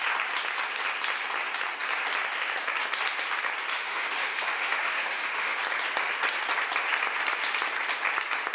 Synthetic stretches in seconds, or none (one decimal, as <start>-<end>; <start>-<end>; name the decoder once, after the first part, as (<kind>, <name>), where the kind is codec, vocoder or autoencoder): 3.7-5.6 (autoencoder, DAC-VAE)

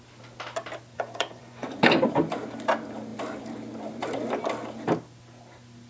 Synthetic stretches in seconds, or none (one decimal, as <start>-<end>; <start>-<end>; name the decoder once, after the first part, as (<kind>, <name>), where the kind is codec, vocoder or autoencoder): 0.9-1.8 (vocoder, Vocos)

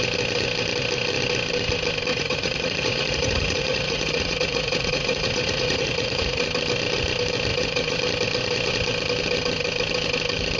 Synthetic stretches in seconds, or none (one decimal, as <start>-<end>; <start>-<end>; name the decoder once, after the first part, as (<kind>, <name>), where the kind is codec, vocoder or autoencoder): 2.1-6.4 (vocoder, Vocos); 7.5-8.0